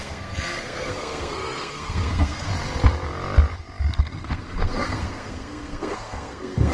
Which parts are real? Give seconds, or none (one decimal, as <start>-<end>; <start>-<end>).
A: 2.5-4.0